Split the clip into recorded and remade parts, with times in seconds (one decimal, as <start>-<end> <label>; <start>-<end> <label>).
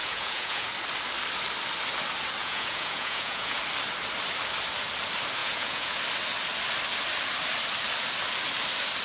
0.0-0.7 remade; 0.7-2.4 recorded; 2.4-3.6 remade; 3.6-5.4 recorded; 5.4-6.0 remade; 6.0-9.0 recorded